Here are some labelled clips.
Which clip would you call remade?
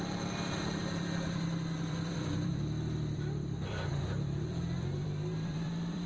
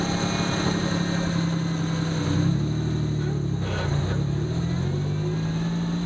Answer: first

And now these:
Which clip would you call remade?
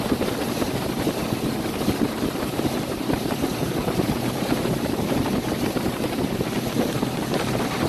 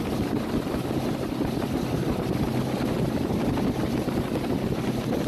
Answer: first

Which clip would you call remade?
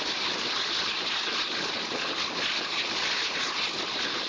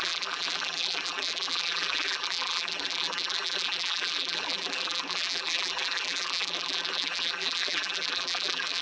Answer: second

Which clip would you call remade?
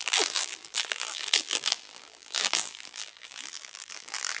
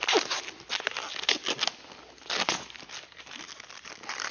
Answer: first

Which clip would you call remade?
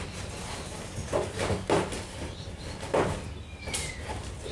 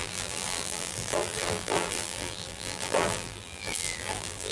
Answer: second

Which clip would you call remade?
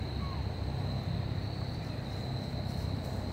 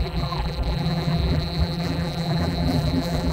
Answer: second